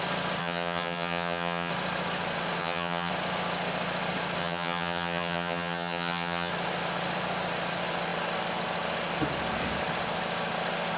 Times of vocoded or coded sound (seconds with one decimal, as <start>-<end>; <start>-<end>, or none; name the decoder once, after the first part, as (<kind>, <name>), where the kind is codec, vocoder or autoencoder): 0.4-1.7 (vocoder, HiFi-GAN); 2.6-3.1; 4.4-6.5